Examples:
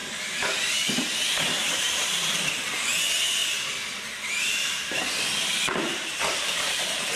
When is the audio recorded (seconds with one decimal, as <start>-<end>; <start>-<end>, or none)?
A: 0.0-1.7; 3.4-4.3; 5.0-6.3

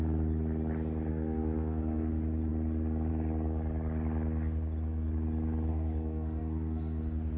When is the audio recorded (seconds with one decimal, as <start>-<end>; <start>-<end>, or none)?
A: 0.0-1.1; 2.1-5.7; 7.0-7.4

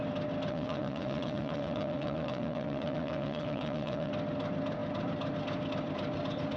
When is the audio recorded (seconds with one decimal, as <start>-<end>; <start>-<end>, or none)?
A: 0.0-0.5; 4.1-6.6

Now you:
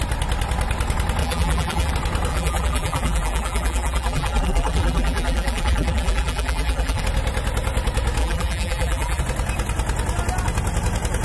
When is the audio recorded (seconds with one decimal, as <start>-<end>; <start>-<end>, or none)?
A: 0.0-1.2; 1.9-2.3; 7.0-8.2; 9.2-11.2

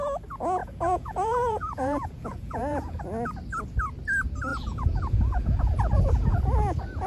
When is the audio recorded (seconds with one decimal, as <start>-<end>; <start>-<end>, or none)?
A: 0.0-0.6; 3.0-4.5; 6.4-7.1